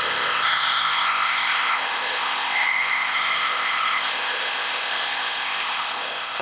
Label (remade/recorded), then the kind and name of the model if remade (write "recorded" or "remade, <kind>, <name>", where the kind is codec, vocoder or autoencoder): remade, codec, ZipCodec